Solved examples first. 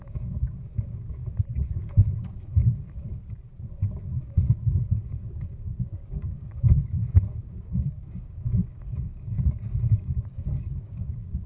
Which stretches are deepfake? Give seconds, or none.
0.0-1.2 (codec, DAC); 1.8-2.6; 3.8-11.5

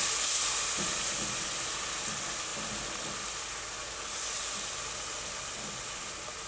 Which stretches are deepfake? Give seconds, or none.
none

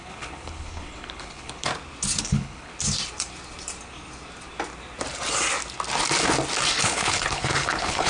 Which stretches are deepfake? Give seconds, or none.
0.0-1.7 (codec, HILCodec); 2.2-2.7; 6.8-8.1